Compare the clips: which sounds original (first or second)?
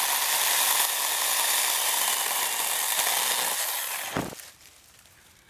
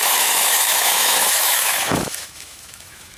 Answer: first